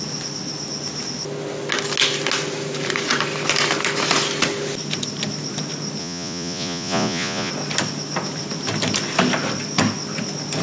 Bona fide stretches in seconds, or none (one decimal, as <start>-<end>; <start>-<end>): 0.0-6.0; 7.5-10.6